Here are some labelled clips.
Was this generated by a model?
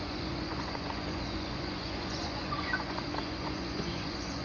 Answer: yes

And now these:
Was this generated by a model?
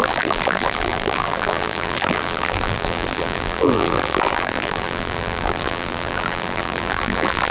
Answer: yes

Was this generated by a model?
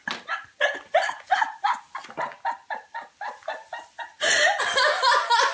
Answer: no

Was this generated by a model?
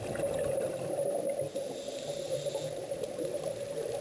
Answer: no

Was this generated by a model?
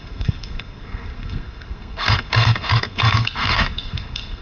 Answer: yes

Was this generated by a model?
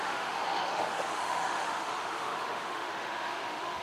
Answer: yes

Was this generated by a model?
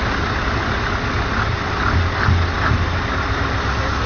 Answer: no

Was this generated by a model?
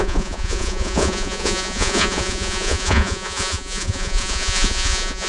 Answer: yes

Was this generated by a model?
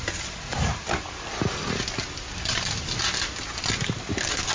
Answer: no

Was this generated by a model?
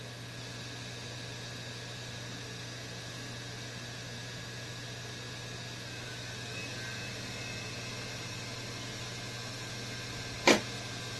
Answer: no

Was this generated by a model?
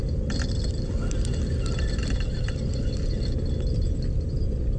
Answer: no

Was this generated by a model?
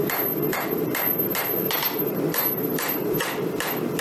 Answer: yes